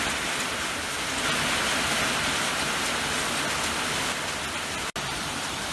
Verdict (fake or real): real